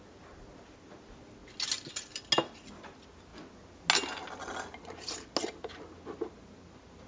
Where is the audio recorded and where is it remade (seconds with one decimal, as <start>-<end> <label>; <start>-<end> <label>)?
0.0-7.1 recorded